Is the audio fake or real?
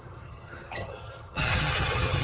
fake